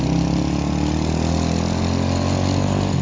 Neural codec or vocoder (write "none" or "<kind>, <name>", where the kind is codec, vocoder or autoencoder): none